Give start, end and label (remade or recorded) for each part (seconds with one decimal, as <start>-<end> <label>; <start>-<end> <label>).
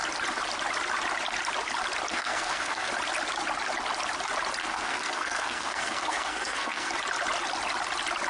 0.0-2.1 recorded; 2.1-2.9 remade; 2.9-4.6 recorded; 4.6-6.9 remade; 6.9-8.3 recorded